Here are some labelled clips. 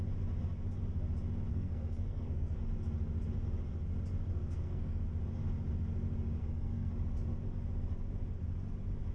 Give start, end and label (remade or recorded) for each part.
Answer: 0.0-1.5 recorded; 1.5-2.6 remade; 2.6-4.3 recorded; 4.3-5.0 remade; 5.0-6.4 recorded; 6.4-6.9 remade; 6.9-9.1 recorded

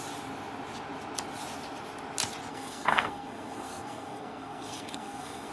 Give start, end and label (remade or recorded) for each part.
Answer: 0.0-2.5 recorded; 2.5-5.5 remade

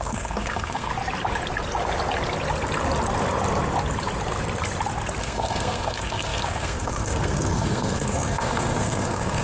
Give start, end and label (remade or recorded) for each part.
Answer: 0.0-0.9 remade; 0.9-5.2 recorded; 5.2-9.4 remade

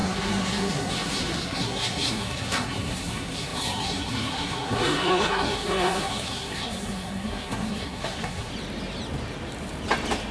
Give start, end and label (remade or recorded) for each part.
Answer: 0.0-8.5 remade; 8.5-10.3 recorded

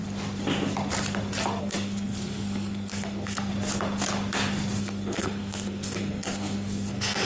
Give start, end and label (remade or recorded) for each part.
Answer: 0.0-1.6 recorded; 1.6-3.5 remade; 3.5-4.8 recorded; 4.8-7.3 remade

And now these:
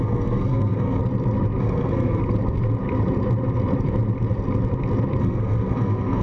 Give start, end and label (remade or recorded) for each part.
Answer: 0.0-1.0 remade; 1.0-1.6 recorded; 1.6-2.2 remade; 2.2-5.2 recorded; 5.2-6.2 remade

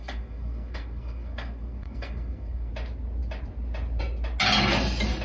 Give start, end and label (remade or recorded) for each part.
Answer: 0.0-2.7 remade; 2.7-5.2 recorded